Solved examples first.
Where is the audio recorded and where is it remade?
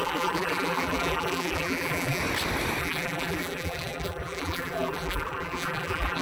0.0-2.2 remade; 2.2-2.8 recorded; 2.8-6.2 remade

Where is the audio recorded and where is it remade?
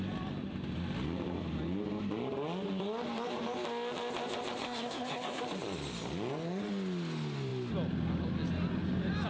0.0-4.6 recorded; 4.6-5.4 remade; 5.4-9.3 recorded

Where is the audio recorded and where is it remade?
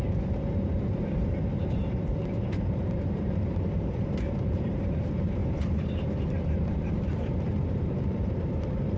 0.0-9.0 remade